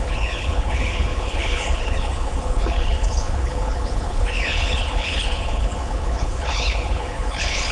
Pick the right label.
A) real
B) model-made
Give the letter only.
B